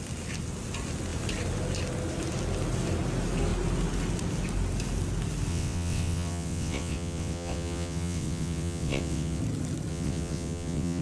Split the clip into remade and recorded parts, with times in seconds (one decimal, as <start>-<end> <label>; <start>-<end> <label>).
0.0-5.5 recorded; 5.5-9.4 remade; 9.4-9.9 recorded; 9.9-11.0 remade